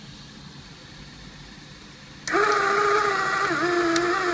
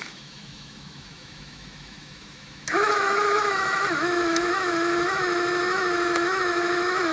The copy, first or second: second